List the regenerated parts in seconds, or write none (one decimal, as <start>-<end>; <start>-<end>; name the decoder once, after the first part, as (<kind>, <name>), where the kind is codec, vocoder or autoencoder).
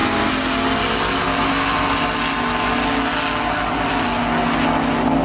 none